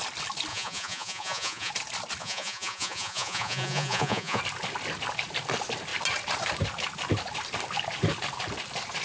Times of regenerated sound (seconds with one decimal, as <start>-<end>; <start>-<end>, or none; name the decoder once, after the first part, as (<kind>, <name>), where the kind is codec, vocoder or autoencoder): 0.5-1.7 (vocoder, Vocos); 2.2-4.4

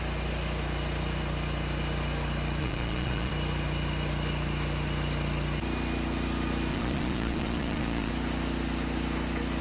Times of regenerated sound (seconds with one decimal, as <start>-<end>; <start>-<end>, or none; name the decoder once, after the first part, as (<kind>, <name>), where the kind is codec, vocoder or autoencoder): 2.6-3.3 (vocoder, Vocos); 6.7-8.1

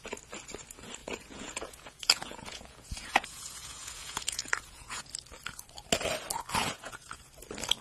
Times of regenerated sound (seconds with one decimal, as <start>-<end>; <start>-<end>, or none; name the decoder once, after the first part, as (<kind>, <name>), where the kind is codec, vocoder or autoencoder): 1.0-5.1 (vocoder, Vocos); 6.6-7.3